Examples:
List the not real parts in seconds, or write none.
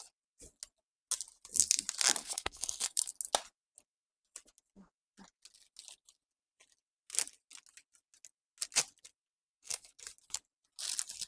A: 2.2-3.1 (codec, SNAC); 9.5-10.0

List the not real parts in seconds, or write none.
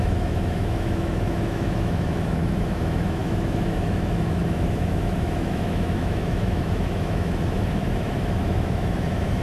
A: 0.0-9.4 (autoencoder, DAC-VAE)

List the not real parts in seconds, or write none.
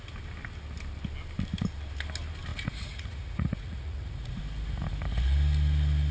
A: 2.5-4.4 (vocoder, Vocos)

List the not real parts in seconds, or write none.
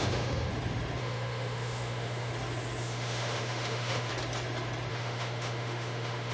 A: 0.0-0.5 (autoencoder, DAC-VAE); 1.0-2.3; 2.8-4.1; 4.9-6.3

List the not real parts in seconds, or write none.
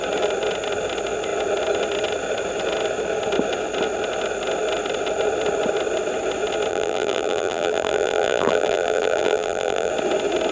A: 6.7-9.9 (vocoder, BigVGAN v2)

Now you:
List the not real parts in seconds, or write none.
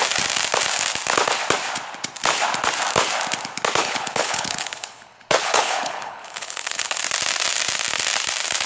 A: 3.8-7.0 (codec, HILCodec)